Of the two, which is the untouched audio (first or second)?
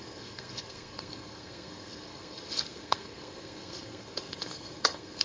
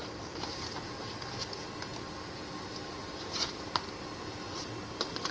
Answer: second